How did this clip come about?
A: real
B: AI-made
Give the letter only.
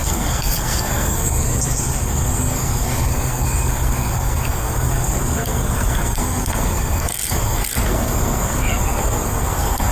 B